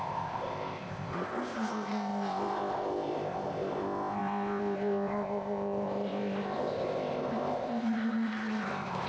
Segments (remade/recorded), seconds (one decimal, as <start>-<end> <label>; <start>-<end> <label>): 0.0-9.1 remade